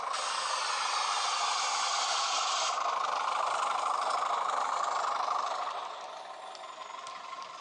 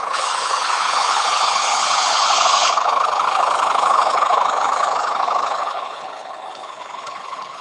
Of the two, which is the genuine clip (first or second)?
first